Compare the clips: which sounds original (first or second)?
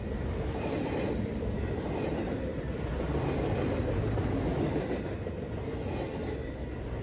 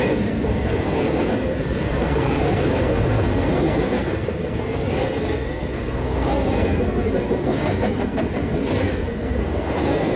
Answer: first